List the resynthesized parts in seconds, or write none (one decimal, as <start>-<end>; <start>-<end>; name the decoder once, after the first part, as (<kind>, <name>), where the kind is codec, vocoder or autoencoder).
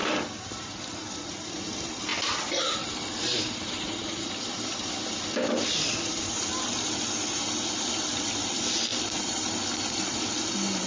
0.0-8.9 (vocoder, BigVGAN v2); 9.9-10.9